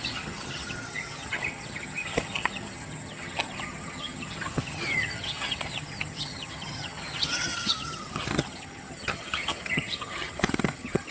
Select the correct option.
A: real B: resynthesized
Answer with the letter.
B